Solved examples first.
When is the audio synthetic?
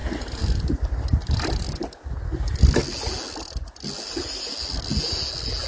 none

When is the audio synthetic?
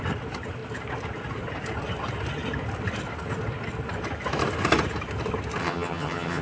5.6-6.4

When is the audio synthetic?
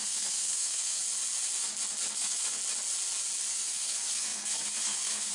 0.0-1.0; 2.1-2.6; 3.5-5.3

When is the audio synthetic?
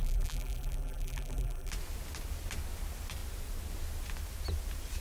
0.0-1.7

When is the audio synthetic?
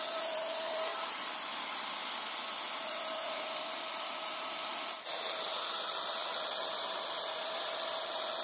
0.9-1.5; 6.2-7.0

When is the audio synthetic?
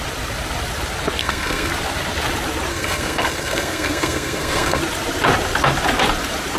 1.2-1.7; 2.7-4.8